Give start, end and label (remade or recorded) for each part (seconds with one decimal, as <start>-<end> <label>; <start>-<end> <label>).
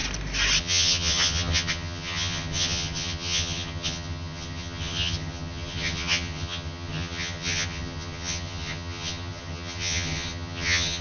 0.0-0.6 recorded; 0.6-11.0 remade